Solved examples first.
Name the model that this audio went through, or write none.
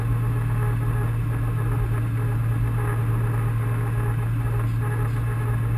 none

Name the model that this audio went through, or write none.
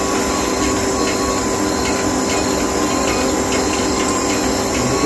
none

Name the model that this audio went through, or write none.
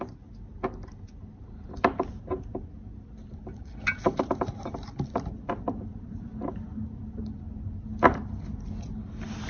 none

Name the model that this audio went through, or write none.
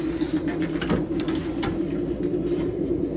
none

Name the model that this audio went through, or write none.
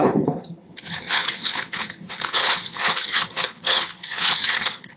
codec, HILCodec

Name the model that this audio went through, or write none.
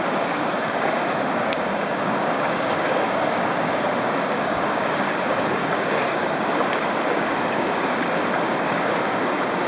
codec, DAC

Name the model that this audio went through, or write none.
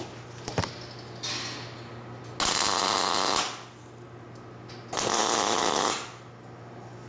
none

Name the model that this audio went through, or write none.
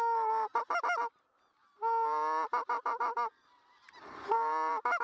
none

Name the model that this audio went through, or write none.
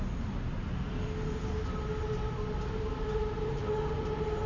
none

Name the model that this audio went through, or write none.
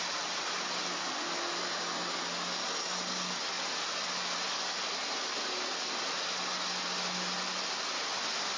none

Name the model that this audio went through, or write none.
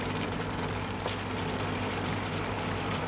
none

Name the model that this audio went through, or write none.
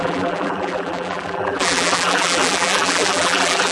vocoder, BigVGAN v2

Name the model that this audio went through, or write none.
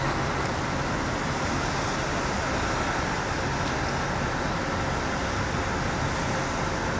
none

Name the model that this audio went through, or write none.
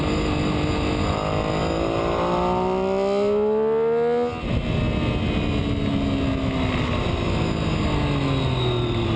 none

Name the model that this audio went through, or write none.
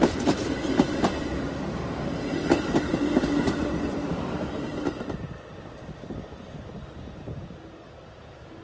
none